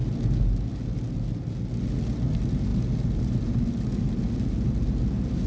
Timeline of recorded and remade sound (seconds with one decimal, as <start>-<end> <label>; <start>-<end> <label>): 0.0-5.5 recorded